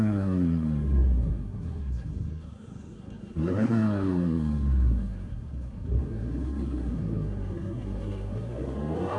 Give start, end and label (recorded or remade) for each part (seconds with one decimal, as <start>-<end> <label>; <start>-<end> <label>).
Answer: 0.0-9.2 remade